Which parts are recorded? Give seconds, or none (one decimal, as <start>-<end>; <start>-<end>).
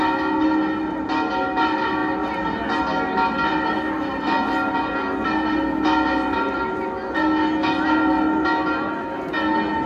0.0-9.9